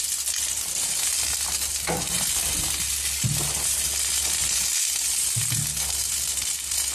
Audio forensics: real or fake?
real